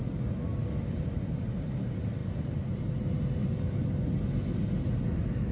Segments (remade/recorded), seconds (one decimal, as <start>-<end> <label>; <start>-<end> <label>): 0.0-5.5 recorded